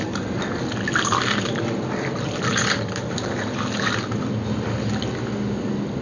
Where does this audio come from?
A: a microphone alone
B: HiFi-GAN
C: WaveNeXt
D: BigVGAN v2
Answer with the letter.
A